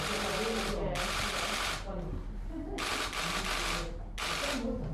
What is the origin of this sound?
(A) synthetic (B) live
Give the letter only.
B